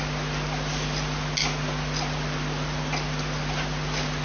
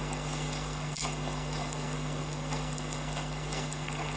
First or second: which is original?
first